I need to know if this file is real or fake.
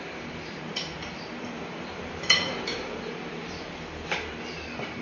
fake